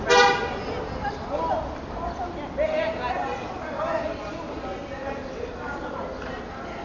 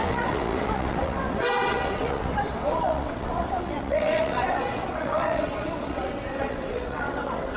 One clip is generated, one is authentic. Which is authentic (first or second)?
first